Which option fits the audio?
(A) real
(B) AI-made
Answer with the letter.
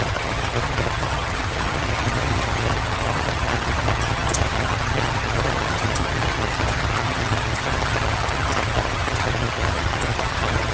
B